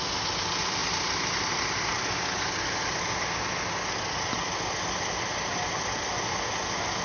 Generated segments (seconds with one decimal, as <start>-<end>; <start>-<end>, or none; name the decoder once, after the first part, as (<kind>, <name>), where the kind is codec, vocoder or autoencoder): none